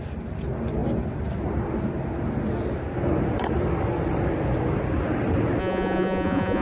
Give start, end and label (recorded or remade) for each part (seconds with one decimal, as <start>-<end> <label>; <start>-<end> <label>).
0.0-5.6 recorded; 5.6-6.6 remade